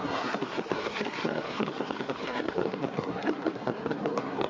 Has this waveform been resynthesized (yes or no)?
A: yes